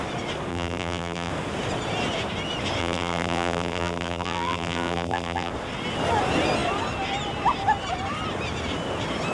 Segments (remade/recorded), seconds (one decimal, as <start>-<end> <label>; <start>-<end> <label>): 0.0-0.5 recorded; 0.5-1.3 remade; 1.3-2.8 recorded; 2.8-5.5 remade; 5.5-9.3 recorded